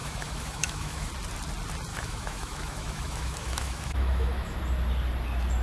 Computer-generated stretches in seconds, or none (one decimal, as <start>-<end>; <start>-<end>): 0.0-1.1; 1.9-4.6